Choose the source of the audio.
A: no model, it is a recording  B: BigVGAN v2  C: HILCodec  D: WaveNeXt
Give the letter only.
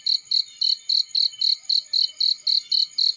A